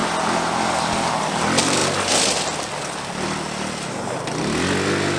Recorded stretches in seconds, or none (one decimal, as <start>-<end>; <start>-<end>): 0.0-5.2